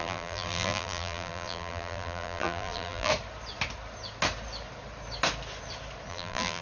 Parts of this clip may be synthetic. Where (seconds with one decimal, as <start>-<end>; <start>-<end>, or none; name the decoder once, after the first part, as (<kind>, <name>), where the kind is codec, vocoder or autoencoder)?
0.0-3.1 (vocoder, BigVGAN v2); 6.1-6.6